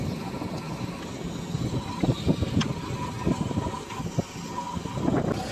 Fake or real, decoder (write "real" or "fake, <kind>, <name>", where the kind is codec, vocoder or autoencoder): real